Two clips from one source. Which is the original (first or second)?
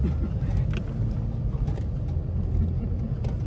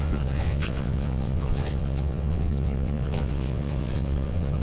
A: first